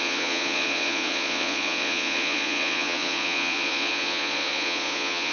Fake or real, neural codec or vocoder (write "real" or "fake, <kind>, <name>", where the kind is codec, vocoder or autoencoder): fake, vocoder, Vocos